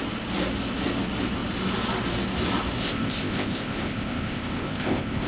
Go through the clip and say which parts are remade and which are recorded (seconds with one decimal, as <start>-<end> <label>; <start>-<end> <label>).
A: 0.0-2.8 recorded; 2.8-5.3 remade